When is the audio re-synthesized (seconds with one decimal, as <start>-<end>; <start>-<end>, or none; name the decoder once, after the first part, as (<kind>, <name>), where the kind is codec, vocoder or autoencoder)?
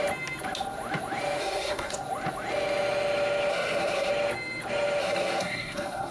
1.4-1.9 (codec, SNAC); 3.5-4.1; 5.0-6.1